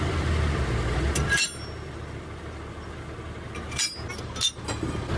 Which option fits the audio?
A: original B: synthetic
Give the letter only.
A